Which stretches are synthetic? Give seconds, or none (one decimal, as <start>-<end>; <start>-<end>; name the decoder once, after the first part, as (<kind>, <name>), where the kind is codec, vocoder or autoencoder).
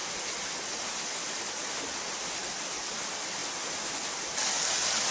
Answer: 0.0-1.2 (vocoder, BigVGAN v2)